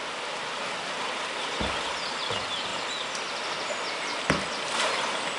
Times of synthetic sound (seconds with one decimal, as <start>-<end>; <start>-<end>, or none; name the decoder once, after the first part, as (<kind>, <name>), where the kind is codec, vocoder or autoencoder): none